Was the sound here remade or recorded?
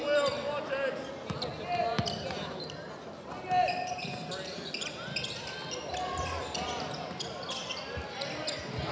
recorded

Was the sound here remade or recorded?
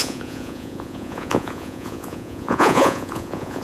remade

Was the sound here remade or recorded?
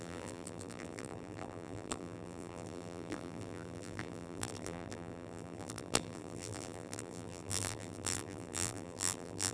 remade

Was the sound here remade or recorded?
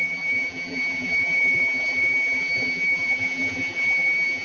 remade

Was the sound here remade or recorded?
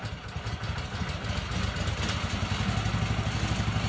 recorded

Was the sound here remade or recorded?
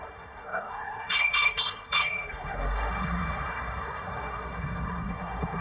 remade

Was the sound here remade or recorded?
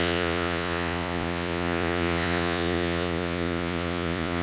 remade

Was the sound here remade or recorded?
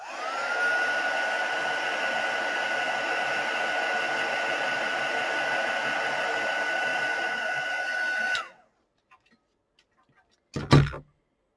recorded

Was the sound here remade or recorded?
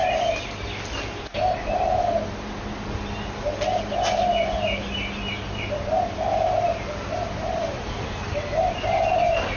recorded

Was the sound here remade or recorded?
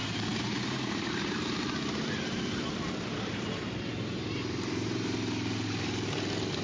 remade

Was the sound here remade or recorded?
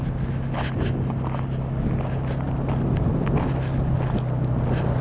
recorded